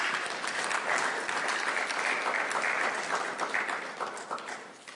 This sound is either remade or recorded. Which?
remade